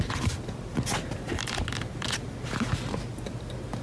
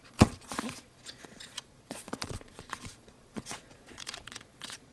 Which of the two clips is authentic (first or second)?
first